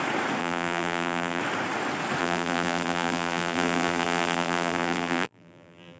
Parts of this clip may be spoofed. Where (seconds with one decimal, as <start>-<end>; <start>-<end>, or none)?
0.4-1.4; 2.2-6.0